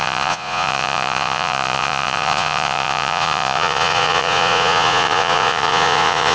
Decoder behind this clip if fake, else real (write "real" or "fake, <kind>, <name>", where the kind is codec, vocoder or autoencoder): fake, vocoder, Vocos